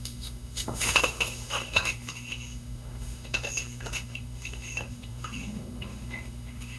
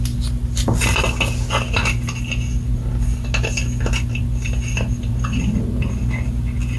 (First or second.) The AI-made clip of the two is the first